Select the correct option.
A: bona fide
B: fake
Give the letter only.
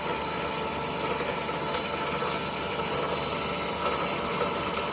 A